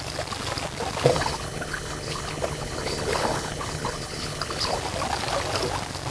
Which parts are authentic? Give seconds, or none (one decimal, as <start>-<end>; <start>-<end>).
0.0-1.1; 4.8-6.1